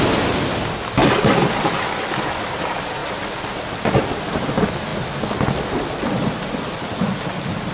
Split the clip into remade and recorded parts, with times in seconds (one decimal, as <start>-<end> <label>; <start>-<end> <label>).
0.0-7.7 recorded